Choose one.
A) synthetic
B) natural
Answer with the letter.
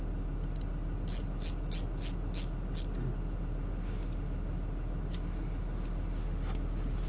B